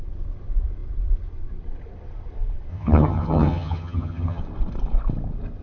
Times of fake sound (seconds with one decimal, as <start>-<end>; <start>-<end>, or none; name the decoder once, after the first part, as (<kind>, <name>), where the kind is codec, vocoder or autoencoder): 2.7-4.4 (vocoder, HiFi-GAN)

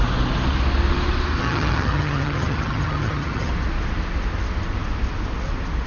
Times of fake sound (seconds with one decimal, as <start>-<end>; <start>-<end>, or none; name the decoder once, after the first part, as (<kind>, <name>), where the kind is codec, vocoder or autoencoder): 1.4-3.5 (vocoder, HiFi-GAN)

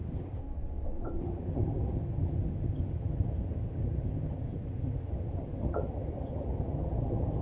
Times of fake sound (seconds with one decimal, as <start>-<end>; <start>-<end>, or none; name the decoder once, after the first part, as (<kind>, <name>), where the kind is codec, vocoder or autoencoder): 0.0-0.4 (vocoder, HiFi-GAN); 1.2-7.4

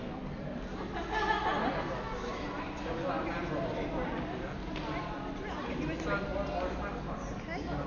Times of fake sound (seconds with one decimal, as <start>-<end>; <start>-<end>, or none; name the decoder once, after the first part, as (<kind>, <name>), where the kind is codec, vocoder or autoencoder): none

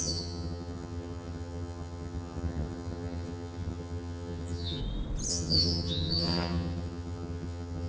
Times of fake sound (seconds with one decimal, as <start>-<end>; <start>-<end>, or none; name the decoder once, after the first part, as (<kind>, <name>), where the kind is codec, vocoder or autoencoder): 0.0-4.8 (vocoder, HiFi-GAN); 5.3-7.9

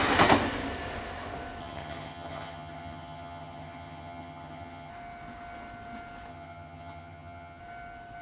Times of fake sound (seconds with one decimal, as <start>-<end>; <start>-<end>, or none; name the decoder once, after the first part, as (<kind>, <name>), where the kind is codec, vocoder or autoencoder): 1.6-4.9 (vocoder, HiFi-GAN); 6.3-7.6